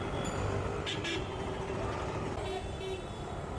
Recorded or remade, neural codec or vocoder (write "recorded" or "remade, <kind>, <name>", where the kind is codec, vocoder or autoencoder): recorded